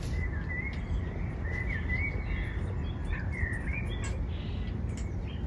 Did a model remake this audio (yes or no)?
no